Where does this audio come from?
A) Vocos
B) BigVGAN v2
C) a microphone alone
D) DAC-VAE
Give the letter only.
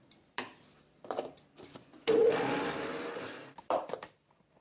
B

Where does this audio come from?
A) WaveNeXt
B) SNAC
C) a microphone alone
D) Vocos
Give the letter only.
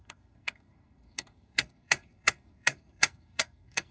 B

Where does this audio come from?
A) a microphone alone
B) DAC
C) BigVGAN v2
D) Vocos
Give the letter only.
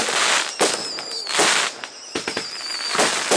A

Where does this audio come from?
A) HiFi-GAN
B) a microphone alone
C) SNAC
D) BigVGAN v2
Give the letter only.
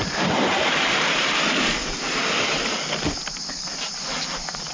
B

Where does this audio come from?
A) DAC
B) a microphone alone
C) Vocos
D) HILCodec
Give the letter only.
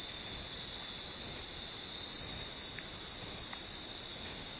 B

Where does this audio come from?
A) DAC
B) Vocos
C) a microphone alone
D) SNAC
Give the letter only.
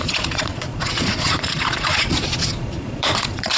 B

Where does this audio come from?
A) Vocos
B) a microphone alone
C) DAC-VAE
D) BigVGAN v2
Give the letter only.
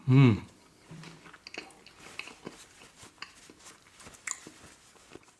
B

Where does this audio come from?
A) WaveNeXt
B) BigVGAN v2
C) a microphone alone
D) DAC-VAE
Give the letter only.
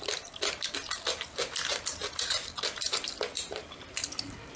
B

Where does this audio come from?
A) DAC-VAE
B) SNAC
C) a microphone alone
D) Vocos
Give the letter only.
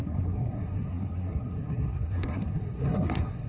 B